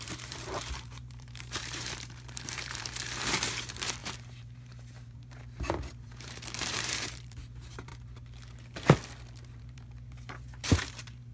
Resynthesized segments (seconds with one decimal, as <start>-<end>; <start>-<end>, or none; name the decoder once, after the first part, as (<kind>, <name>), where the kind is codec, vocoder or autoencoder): 0.0-7.9 (vocoder, BigVGAN v2); 9.6-11.3

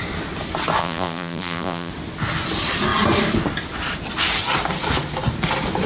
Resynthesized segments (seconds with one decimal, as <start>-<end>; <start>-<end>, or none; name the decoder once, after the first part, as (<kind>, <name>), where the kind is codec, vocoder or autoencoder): 0.8-1.9 (vocoder, BigVGAN v2)

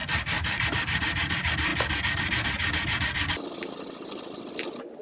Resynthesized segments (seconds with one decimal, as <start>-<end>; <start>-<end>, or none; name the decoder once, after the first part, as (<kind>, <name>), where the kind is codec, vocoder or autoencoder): 0.0-1.7 (vocoder, BigVGAN v2)

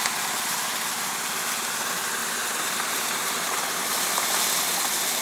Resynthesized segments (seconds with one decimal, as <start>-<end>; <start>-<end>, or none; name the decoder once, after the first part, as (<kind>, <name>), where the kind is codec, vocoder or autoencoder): 2.2-4.4 (vocoder, BigVGAN v2)